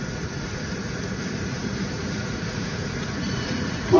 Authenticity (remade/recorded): remade